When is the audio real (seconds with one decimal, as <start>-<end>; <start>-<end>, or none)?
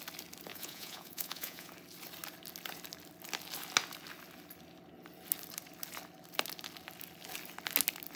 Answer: 0.0-0.5; 1.7-8.2